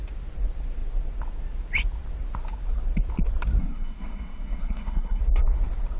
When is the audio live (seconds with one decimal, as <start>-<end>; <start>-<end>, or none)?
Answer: 0.0-3.6; 5.2-6.0